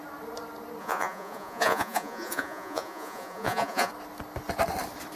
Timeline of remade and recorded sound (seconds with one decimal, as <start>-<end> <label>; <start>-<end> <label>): 0.0-0.8 recorded; 0.8-3.9 remade; 3.9-5.2 recorded